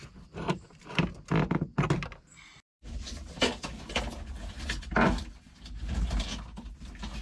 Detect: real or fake real